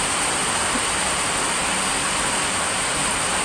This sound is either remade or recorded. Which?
recorded